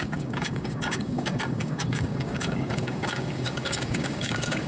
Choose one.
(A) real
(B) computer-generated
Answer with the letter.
B